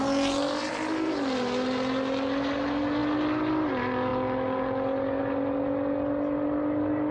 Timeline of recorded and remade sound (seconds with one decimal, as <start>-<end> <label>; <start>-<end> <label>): 0.0-7.1 recorded